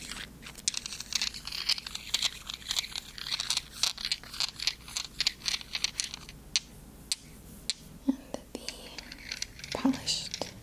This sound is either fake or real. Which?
real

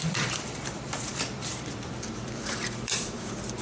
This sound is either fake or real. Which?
fake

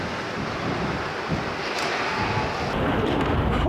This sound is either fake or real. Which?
real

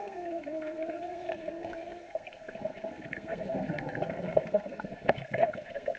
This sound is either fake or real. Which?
fake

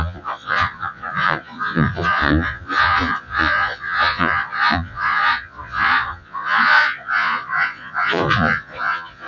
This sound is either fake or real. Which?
fake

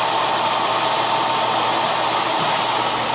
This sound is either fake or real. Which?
fake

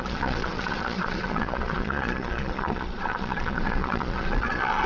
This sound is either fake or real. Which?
fake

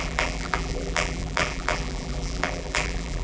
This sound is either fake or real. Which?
fake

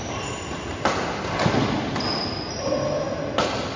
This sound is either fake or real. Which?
real